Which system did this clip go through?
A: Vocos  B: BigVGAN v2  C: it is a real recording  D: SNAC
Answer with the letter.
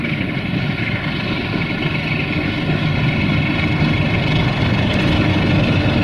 C